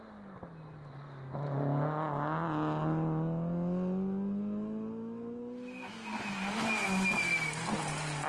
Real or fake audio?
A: real